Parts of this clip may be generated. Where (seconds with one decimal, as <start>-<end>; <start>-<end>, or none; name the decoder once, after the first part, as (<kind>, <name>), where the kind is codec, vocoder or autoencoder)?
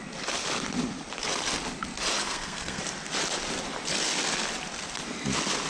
2.2-2.8 (codec, SNAC)